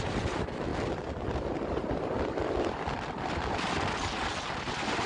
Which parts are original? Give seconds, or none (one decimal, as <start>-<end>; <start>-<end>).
0.0-5.1